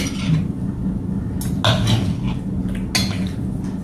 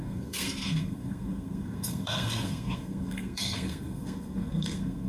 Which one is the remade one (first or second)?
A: second